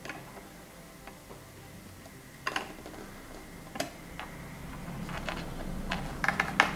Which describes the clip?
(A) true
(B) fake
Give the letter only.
A